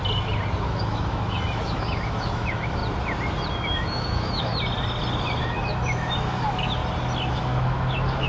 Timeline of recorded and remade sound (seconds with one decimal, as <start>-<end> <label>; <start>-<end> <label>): 0.0-0.6 recorded; 0.6-2.8 remade; 2.8-3.5 recorded; 3.5-4.5 remade; 4.5-5.4 recorded; 5.4-6.8 remade; 6.8-7.3 recorded; 7.3-8.3 remade